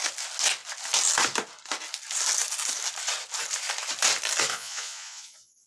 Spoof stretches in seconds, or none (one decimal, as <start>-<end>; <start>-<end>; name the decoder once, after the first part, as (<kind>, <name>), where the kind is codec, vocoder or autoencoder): 4.5-5.7 (vocoder, Vocos)